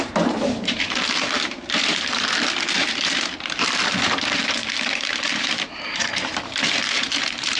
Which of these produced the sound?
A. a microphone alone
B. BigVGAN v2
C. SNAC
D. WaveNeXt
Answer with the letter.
B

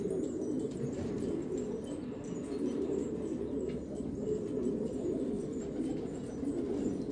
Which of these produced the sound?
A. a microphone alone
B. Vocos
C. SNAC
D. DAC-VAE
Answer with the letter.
A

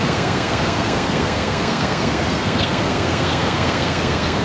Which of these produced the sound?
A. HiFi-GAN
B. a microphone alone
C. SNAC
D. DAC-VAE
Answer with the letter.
C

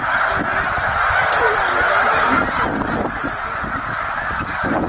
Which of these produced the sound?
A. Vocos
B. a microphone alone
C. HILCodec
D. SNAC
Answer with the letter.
B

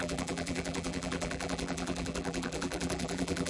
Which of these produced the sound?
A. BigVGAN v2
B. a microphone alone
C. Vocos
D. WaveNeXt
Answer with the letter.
A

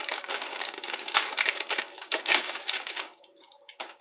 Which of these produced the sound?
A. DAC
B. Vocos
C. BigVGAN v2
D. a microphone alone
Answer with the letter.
A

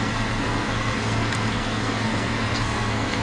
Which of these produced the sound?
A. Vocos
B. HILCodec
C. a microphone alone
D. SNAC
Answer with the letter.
D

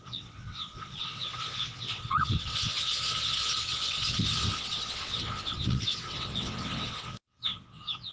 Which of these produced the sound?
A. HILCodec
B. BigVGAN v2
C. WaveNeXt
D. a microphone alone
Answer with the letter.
C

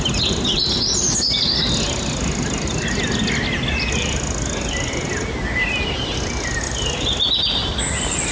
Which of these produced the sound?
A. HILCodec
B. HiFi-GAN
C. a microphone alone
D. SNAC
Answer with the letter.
C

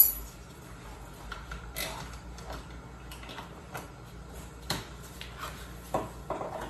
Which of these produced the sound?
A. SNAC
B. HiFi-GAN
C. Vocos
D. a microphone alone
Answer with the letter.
D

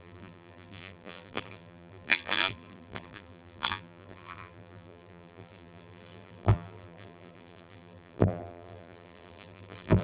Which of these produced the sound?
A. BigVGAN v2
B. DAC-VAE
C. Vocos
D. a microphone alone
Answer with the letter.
A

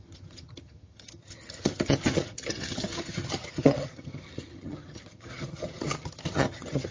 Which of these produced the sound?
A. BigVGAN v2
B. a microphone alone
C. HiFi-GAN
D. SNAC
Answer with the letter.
C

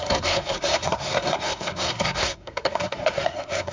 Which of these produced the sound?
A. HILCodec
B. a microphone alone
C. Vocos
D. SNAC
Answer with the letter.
D